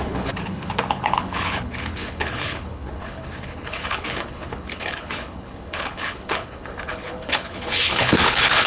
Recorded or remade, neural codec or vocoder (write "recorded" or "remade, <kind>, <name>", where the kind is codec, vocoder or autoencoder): remade, codec, HILCodec